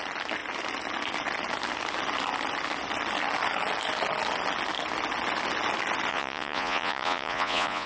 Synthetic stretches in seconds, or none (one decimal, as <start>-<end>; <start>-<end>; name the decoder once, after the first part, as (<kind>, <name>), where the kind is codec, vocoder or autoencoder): 6.1-7.9 (vocoder, Vocos)

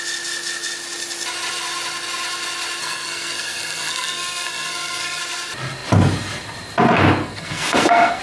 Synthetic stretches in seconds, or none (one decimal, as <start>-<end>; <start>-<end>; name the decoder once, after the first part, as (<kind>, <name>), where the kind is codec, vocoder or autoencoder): 2.8-5.2 (codec, SNAC); 7.2-8.2

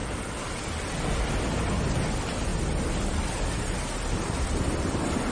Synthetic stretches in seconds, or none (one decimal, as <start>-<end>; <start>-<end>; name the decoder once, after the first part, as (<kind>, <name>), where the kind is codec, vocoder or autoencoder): none

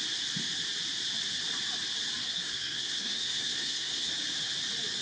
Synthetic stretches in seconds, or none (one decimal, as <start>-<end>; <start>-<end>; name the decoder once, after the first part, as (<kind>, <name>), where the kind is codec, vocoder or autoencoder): 2.2-4.1 (codec, SNAC)

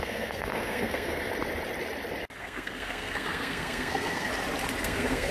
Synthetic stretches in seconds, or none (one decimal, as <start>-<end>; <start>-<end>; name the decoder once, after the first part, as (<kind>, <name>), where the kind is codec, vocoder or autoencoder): 0.0-1.3 (codec, SNAC); 2.4-4.3; 4.8-5.3

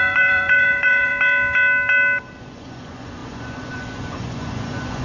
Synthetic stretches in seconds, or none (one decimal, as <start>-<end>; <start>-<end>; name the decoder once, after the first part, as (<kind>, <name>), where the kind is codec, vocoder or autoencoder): 0.0-1.1 (vocoder, Vocos); 2.4-5.0